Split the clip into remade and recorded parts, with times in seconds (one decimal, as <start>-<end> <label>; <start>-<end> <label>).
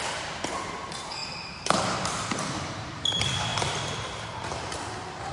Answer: 0.0-3.5 remade; 3.5-5.3 recorded